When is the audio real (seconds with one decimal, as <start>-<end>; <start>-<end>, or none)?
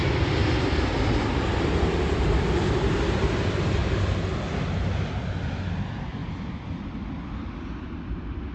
0.0-8.5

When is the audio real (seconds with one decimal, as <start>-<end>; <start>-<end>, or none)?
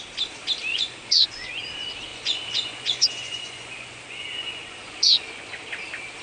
0.0-0.7; 1.6-2.1; 5.5-6.2